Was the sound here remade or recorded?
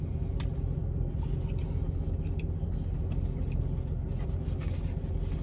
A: recorded